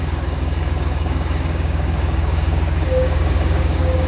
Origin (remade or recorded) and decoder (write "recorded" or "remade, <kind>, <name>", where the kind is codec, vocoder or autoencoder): remade, codec, DAC